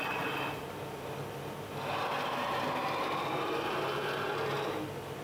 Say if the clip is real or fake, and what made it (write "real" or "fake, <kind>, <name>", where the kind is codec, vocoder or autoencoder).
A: real